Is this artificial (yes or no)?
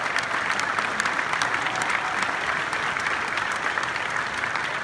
yes